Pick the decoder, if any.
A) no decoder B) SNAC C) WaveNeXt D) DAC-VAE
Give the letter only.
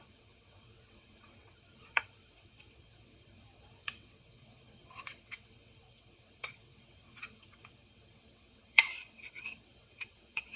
C